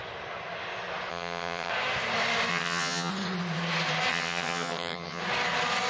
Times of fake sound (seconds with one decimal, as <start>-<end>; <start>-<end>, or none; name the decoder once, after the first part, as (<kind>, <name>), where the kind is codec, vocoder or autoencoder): 1.1-1.7 (vocoder, HiFi-GAN); 2.5-3.1; 4.1-5.2